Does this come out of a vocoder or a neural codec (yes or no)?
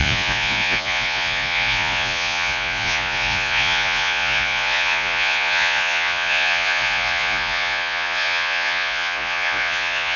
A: yes